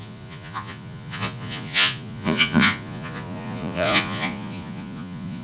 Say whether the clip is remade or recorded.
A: remade